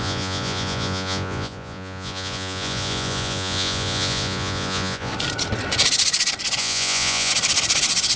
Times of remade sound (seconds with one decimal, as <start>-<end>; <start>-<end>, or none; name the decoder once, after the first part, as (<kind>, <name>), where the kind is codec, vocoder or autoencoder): 0.0-5.1 (vocoder, Vocos); 6.6-7.3